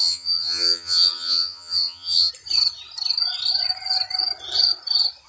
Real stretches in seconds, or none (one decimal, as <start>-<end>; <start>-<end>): 2.3-5.3